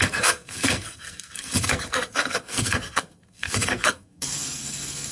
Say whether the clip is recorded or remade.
remade